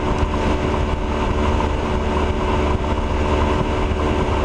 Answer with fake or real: real